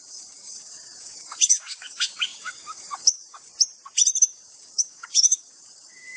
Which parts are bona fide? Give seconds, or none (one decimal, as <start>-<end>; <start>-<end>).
3.5-4.2